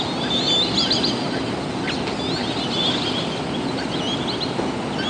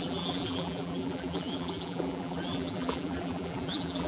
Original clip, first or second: first